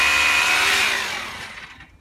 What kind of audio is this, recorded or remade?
recorded